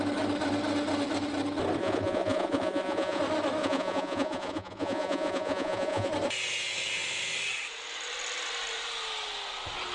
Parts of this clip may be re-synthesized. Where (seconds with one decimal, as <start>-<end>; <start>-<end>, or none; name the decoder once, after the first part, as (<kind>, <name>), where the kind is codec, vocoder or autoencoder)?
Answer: 1.8-3.2 (vocoder, Vocos); 3.6-6.1